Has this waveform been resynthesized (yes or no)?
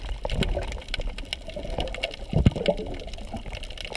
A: no